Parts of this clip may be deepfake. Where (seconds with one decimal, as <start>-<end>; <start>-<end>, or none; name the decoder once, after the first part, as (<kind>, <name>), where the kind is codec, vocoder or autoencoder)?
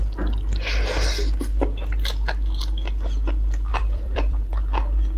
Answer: 3.7-4.5 (vocoder, BigVGAN v2)